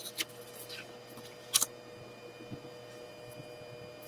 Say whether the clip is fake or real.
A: real